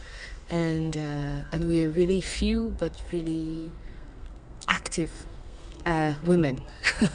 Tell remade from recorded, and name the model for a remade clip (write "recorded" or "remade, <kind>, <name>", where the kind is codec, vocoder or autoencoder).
remade, codec, SNAC